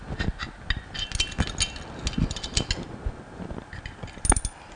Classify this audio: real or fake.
real